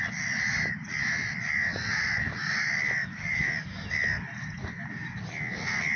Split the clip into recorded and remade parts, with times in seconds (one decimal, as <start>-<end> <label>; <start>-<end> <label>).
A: 0.0-3.0 recorded; 3.0-3.8 remade; 3.8-6.0 recorded